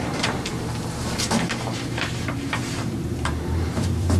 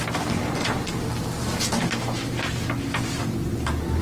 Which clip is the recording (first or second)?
second